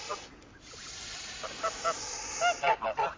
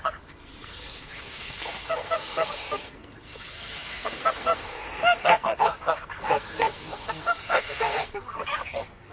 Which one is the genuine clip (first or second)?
first